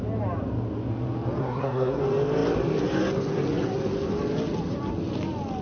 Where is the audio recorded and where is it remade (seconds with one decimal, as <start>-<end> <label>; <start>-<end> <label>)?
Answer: 0.0-1.4 recorded; 1.4-2.0 remade; 2.0-5.6 recorded

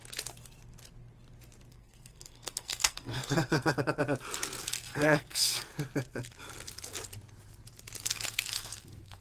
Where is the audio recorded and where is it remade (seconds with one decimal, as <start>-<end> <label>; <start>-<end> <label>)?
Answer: 0.0-1.7 recorded; 1.7-4.0 remade; 4.0-4.6 recorded; 4.6-5.7 remade; 5.7-8.0 recorded; 8.0-9.2 remade

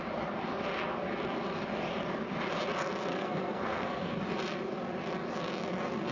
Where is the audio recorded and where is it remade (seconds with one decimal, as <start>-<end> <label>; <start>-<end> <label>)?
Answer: 0.0-3.1 recorded; 3.1-4.2 remade; 4.2-6.1 recorded

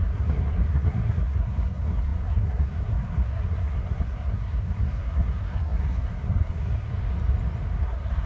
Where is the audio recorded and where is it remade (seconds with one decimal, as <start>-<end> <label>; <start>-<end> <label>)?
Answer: 0.0-6.9 remade; 6.9-7.8 recorded; 7.8-8.3 remade

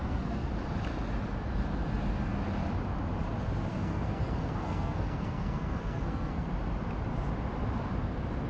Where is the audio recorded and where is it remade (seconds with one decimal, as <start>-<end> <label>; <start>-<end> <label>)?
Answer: 0.0-0.5 remade; 0.5-3.7 recorded; 3.7-6.5 remade; 6.5-8.5 recorded

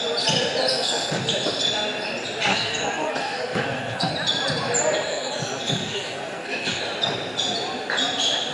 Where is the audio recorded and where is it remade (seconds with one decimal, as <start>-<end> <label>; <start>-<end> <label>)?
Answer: 0.0-0.7 recorded; 0.7-1.2 remade; 1.2-2.5 recorded; 2.5-4.1 remade; 4.1-5.1 recorded; 5.1-6.8 remade; 6.8-8.5 recorded

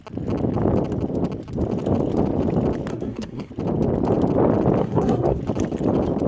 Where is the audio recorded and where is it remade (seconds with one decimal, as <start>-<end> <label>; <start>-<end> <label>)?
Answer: 0.0-2.9 recorded; 2.9-3.5 remade; 3.5-4.8 recorded; 4.8-5.4 remade; 5.4-6.3 recorded

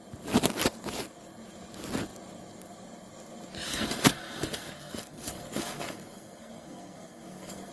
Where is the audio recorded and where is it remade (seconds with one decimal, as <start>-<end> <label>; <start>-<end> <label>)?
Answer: 0.0-3.7 recorded; 3.7-7.7 remade